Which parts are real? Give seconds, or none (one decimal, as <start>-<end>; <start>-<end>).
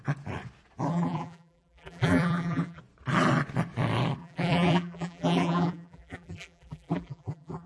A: 0.0-0.9; 2.8-4.2